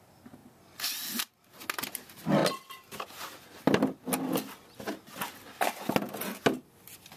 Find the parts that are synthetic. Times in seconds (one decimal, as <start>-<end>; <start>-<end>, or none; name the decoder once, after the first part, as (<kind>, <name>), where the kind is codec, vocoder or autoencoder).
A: none

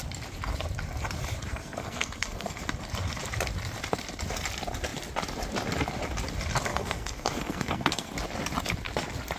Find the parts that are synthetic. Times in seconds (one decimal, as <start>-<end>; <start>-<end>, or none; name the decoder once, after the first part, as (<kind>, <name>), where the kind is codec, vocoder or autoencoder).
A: 1.5-2.6 (codec, SNAC); 6.7-8.1

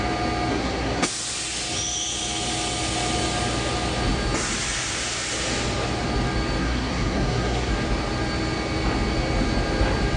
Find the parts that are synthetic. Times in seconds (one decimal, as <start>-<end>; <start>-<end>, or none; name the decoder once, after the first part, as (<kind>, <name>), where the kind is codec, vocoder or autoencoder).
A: 0.5-1.1 (codec, SNAC); 6.6-7.7

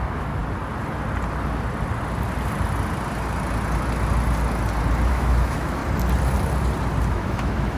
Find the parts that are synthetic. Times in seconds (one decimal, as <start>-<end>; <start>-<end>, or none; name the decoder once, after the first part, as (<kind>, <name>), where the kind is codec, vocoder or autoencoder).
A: 0.0-0.4 (autoencoder, DAC-VAE); 5.1-5.8; 7.1-7.8

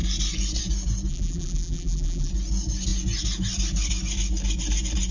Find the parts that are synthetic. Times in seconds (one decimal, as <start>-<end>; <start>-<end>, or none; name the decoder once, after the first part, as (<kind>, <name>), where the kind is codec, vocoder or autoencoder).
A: 1.1-2.3 (vocoder, BigVGAN v2)

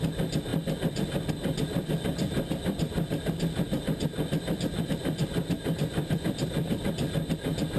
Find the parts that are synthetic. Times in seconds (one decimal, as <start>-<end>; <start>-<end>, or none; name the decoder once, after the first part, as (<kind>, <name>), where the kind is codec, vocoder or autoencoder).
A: none